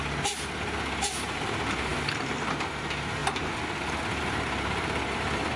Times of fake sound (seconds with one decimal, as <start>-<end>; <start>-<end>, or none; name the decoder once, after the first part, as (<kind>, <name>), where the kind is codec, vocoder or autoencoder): none